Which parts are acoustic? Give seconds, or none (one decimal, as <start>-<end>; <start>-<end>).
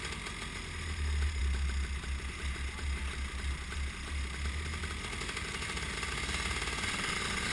0.0-7.5